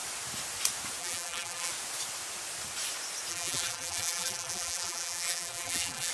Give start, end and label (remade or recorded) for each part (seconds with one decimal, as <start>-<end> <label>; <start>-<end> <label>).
0.0-1.0 recorded; 1.0-1.7 remade; 1.7-3.3 recorded; 3.3-6.1 remade